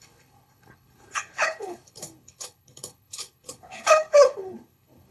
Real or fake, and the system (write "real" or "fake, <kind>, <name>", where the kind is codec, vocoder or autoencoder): fake, codec, HILCodec